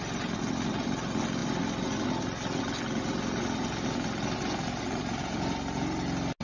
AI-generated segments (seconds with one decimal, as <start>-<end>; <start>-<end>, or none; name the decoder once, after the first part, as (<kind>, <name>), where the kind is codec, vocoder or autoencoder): none